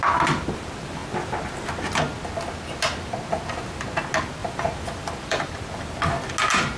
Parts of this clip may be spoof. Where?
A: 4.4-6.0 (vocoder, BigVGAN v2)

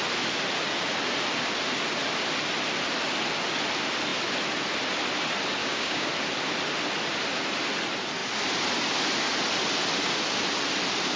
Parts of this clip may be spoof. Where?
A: 5.6-6.1 (codec, DAC)

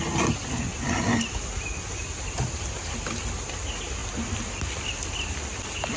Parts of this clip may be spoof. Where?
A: none

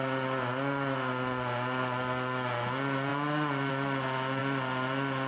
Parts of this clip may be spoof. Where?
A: none

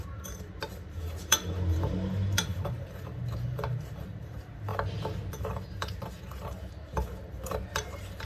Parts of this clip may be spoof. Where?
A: 0.0-4.7 (vocoder, BigVGAN v2); 5.3-8.3

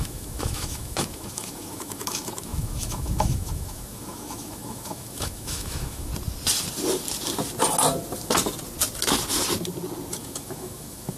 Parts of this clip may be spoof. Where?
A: 0.0-6.1 (autoencoder, DAC-VAE); 10.2-11.2